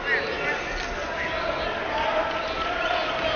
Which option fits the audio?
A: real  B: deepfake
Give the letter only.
A